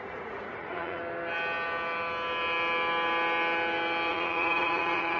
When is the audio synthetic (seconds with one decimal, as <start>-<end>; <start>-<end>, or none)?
0.0-1.0; 4.1-5.2